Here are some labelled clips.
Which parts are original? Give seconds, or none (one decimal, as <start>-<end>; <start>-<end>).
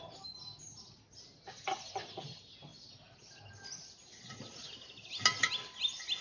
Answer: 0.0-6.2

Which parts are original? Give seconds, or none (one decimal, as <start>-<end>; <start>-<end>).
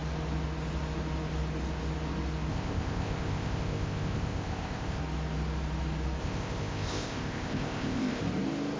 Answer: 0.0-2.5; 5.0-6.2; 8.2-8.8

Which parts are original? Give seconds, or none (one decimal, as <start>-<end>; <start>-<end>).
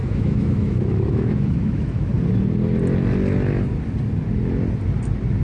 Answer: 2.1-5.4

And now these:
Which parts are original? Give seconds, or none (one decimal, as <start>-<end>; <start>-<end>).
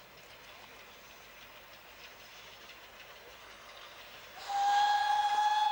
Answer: 0.0-3.4; 4.0-5.7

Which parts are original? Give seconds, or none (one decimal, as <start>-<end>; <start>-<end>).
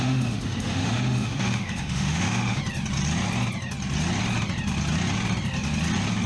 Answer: 2.6-6.3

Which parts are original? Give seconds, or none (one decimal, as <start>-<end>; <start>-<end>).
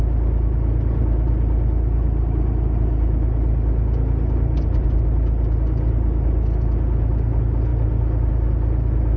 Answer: 0.0-9.2